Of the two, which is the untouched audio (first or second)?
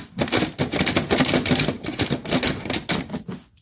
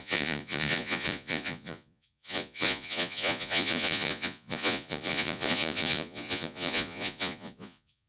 first